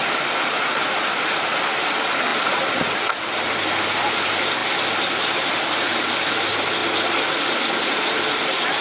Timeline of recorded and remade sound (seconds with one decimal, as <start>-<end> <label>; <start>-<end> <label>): 0.0-8.8 recorded